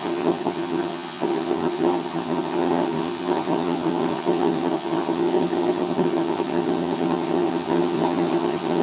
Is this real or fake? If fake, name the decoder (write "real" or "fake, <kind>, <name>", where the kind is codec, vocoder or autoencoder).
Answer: fake, vocoder, HiFi-GAN